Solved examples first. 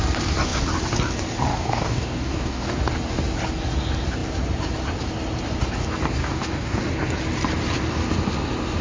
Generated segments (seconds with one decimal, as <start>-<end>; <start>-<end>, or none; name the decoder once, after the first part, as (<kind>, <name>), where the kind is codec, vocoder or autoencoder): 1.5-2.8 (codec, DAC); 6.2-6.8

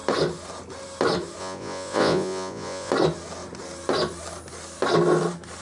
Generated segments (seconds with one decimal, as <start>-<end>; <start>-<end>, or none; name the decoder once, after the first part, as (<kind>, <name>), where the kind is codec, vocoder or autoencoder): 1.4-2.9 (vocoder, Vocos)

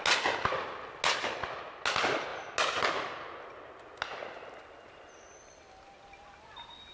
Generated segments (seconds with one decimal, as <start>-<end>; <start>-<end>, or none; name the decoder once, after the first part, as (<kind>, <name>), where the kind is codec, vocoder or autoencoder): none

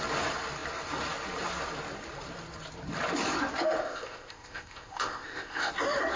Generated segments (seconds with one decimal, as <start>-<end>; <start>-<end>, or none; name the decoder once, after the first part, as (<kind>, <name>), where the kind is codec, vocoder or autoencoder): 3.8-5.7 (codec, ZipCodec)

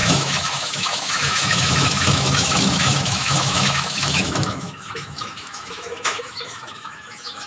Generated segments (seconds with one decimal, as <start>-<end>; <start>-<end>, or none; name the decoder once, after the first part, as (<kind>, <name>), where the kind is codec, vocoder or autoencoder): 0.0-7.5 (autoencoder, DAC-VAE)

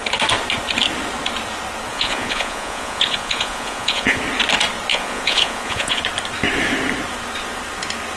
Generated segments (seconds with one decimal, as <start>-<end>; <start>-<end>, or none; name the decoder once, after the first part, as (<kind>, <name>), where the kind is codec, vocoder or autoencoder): 1.9-4.2 (vocoder, Vocos); 4.9-6.0

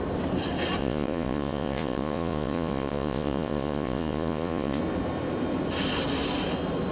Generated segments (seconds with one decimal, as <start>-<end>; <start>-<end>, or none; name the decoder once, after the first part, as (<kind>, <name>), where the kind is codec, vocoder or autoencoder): 0.8-4.8 (vocoder, Vocos)

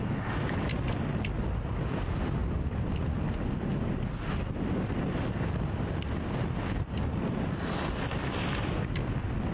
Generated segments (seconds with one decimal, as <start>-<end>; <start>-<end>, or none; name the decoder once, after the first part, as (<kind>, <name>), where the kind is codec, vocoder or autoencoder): none